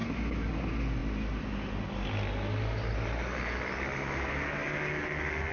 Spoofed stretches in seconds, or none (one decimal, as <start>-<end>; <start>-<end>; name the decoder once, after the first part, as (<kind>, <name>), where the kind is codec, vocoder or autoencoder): 0.0-0.5 (autoencoder, DAC-VAE)